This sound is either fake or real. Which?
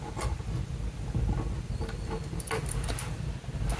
real